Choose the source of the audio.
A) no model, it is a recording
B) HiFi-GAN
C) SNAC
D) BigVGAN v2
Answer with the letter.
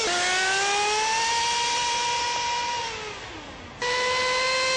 A